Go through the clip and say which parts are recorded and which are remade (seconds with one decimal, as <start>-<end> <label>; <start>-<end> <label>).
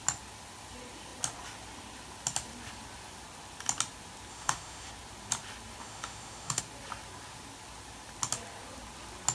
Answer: 0.0-4.3 recorded; 4.3-4.9 remade; 4.9-5.8 recorded; 5.8-6.6 remade; 6.6-9.3 recorded